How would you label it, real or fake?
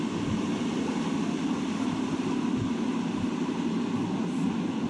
real